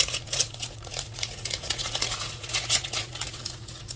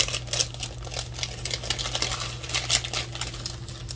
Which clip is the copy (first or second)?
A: first